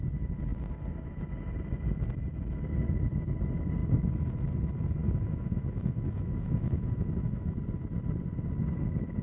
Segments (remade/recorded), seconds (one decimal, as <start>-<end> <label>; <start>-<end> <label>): 0.0-5.0 recorded; 5.0-7.6 remade; 7.6-9.2 recorded